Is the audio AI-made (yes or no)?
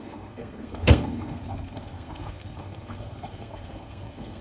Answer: yes